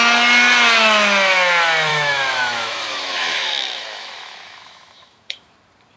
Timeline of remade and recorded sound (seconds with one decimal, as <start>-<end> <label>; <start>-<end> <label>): 0.0-1.9 recorded; 1.9-5.5 remade; 5.5-6.0 recorded